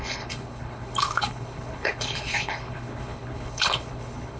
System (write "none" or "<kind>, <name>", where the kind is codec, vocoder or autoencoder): codec, HILCodec